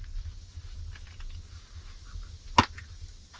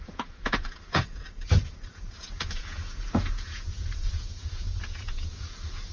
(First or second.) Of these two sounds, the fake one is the second